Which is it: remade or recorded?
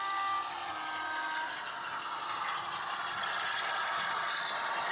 recorded